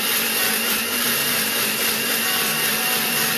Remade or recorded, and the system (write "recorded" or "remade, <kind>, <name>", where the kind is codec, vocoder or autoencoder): remade, vocoder, BigVGAN v2